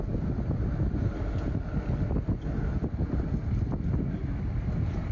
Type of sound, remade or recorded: recorded